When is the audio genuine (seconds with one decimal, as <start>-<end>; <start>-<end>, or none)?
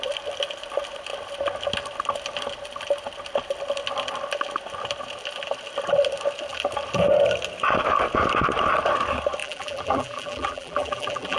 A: 0.0-9.4